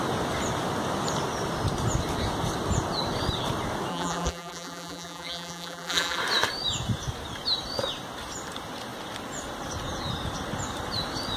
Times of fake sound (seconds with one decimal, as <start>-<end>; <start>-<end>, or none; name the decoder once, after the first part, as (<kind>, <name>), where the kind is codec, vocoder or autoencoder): 3.9-6.2 (vocoder, BigVGAN v2)